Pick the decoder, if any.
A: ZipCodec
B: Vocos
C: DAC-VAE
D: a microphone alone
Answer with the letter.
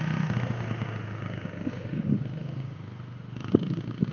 C